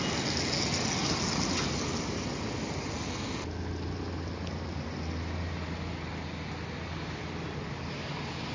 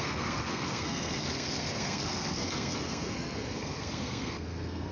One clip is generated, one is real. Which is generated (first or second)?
second